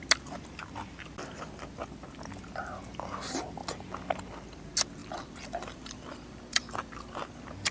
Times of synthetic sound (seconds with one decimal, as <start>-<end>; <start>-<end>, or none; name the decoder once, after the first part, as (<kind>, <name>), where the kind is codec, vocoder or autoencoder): 5.0-6.9 (vocoder, BigVGAN v2)

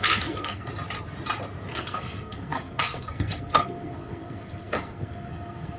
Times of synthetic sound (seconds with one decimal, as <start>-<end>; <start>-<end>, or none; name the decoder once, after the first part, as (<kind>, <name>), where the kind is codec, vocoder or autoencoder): 0.0-0.7 (codec, SNAC); 1.7-5.8

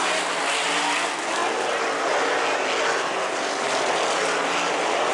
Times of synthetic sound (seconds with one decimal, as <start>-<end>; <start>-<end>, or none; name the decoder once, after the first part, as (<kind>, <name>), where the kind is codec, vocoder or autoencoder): none

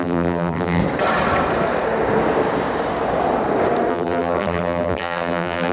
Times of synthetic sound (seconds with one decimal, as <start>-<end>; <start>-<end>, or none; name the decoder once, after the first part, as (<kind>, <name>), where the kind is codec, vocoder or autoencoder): 0.0-0.8 (vocoder, BigVGAN v2); 3.9-5.7

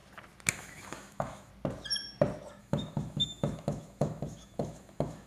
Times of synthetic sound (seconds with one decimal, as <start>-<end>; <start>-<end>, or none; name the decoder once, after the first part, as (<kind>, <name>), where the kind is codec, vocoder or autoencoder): 0.5-1.5 (autoencoder, DAC-VAE); 2.6-5.3

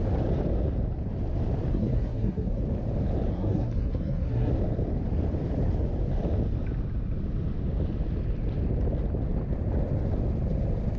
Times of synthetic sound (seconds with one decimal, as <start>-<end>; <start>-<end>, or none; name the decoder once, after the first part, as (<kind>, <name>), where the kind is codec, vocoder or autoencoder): 1.7-2.6 (codec, SNAC); 3.3-4.5